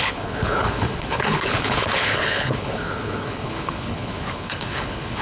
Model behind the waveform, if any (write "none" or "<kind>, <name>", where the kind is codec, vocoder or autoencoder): codec, HILCodec